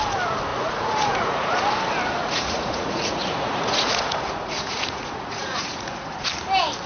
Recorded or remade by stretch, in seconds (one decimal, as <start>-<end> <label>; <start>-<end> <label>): 0.0-0.5 recorded; 0.5-1.6 remade; 1.6-2.2 recorded; 2.2-6.3 remade; 6.3-6.9 recorded